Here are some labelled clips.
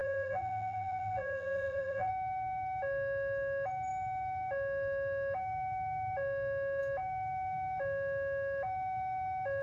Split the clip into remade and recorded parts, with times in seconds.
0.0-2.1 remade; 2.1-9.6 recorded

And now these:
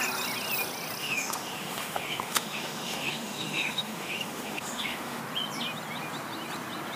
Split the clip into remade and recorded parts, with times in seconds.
0.0-1.0 recorded; 1.0-5.2 remade; 5.2-7.0 recorded

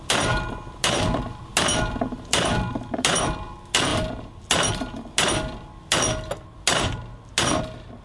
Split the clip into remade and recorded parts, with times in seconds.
0.0-8.0 recorded

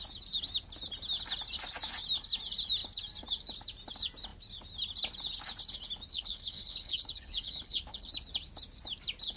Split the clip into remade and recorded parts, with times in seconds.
0.0-6.1 recorded; 6.1-8.1 remade; 8.1-9.4 recorded

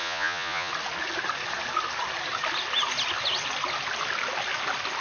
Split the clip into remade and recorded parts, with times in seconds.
0.0-0.7 remade; 0.7-5.0 recorded

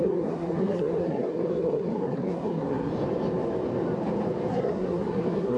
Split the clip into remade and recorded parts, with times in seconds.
0.0-2.9 remade; 2.9-4.5 recorded; 4.5-5.6 remade

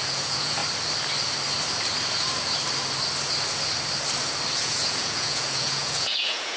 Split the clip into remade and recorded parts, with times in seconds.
0.0-0.6 remade; 0.6-4.6 recorded; 4.6-6.6 remade